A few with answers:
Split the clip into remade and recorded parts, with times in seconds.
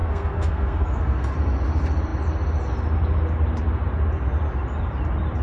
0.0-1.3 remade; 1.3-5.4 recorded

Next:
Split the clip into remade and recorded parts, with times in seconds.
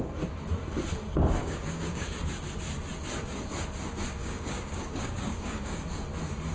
0.0-1.4 recorded; 1.4-2.3 remade; 2.3-4.2 recorded; 4.2-5.8 remade; 5.8-6.5 recorded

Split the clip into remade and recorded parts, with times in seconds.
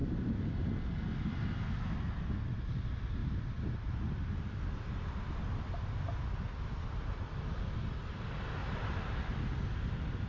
0.0-3.2 recorded; 3.2-3.9 remade; 3.9-8.6 recorded; 8.6-9.1 remade; 9.1-10.3 recorded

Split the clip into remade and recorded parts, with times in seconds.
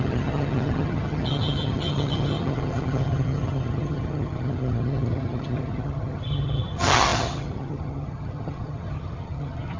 0.0-9.8 remade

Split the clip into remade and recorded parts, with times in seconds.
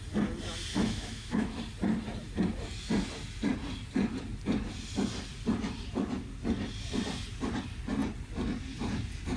0.0-0.7 recorded; 0.7-1.6 remade; 1.6-9.4 recorded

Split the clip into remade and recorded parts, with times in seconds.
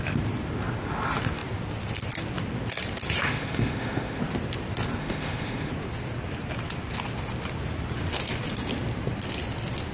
0.0-3.2 recorded; 3.2-4.2 remade; 4.2-5.0 recorded; 5.0-5.7 remade; 5.7-9.9 recorded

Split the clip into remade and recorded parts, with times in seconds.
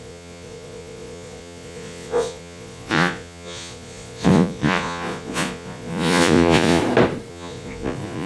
0.0-6.8 remade; 6.8-7.3 recorded; 7.3-8.3 remade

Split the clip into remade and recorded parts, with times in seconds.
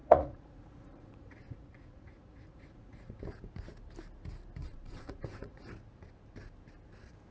0.0-3.2 remade; 3.2-4.6 recorded; 4.6-5.7 remade; 5.7-7.3 recorded